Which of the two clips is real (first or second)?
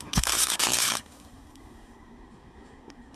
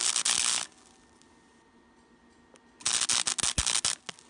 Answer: second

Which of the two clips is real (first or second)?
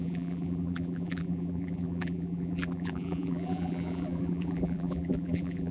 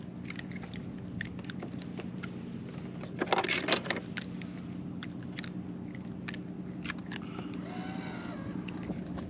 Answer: second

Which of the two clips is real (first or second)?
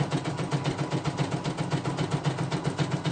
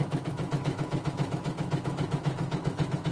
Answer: first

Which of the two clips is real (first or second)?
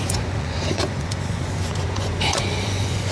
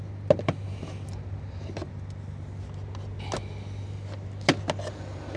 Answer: second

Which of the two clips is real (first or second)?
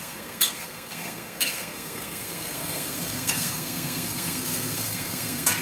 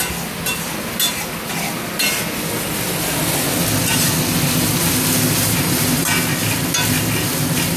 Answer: second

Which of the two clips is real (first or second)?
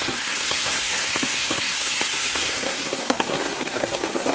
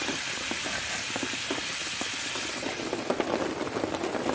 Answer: second